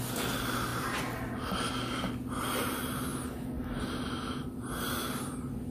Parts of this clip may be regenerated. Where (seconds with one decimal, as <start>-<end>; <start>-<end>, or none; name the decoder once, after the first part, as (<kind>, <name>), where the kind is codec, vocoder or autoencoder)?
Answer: none